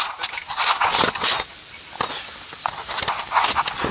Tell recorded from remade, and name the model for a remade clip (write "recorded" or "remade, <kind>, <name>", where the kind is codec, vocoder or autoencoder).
recorded